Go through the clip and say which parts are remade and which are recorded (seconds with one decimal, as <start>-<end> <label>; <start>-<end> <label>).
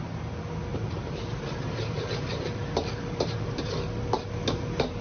0.0-0.7 recorded; 0.7-3.7 remade; 3.7-5.0 recorded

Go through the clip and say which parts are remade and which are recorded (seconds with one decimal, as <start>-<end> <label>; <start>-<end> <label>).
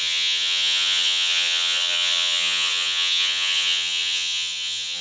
0.0-5.0 remade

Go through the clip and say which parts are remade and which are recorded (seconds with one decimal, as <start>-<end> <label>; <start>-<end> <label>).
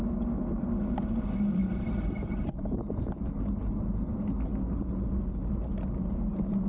0.0-6.7 recorded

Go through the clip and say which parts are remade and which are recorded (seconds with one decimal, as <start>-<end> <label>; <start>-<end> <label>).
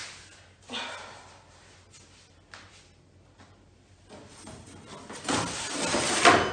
0.0-6.5 recorded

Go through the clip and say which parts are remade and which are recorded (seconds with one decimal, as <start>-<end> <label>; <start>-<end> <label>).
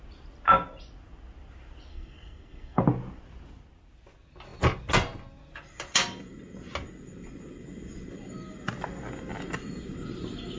0.0-1.9 recorded; 1.9-2.8 remade; 2.8-10.6 recorded